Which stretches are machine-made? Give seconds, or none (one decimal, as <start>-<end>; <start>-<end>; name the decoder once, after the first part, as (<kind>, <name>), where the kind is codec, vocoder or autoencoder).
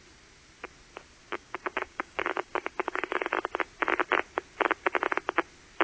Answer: 1.2-3.4 (codec, DAC)